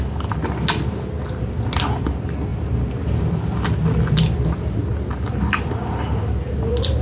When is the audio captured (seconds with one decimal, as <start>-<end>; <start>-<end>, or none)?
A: 0.0-7.0